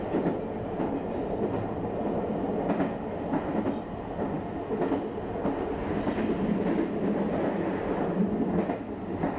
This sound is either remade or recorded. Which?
recorded